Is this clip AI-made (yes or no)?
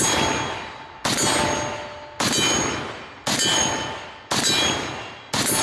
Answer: no